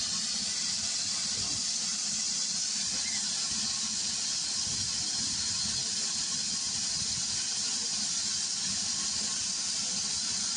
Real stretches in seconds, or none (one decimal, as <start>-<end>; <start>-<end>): 0.0-10.6